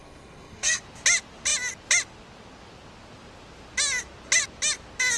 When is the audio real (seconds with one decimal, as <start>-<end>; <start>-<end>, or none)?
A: 0.8-5.2